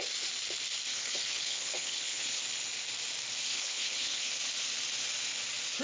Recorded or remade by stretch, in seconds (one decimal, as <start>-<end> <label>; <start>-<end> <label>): 0.0-0.9 recorded; 0.9-2.4 remade; 2.4-3.5 recorded; 3.5-4.3 remade; 4.3-5.8 recorded